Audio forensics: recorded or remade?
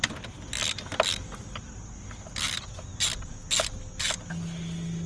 recorded